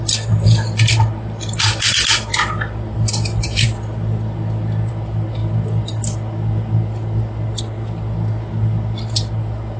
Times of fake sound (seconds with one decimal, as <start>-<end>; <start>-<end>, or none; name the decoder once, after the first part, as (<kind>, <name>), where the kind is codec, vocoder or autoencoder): none